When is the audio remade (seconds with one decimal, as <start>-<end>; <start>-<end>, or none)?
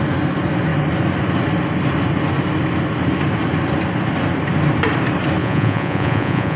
5.4-6.6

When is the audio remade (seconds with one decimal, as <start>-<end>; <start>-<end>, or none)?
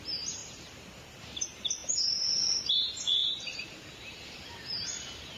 0.0-5.4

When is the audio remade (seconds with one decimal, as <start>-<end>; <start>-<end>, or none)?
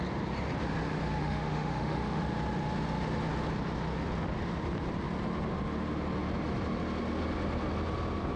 1.2-2.2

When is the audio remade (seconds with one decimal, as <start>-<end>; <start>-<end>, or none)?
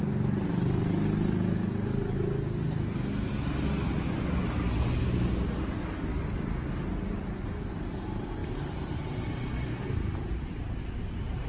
8.4-10.8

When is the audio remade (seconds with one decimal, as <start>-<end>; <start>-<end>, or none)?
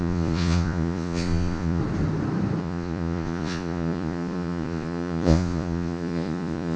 0.0-1.8; 2.6-6.8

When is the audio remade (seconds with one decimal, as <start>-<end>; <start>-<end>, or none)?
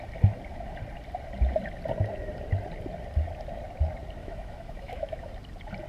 4.2-5.3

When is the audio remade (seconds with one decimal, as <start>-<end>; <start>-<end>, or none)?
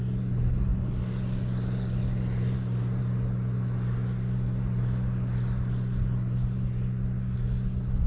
none